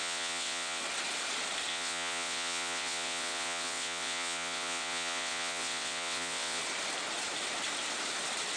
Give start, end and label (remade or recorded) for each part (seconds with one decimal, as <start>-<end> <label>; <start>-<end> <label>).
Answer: 0.0-0.8 remade; 0.8-1.7 recorded; 1.7-6.6 remade; 6.6-8.6 recorded